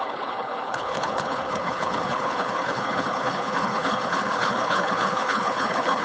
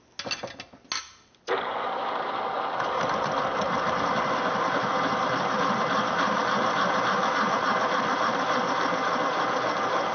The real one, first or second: second